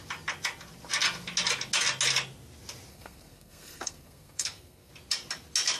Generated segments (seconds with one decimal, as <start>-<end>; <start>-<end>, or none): 2.9-4.9